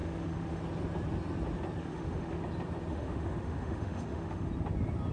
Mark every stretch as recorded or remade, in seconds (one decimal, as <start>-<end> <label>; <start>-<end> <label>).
0.0-0.6 remade; 0.6-1.8 recorded; 1.8-2.4 remade; 2.4-2.9 recorded; 2.9-4.5 remade; 4.5-5.1 recorded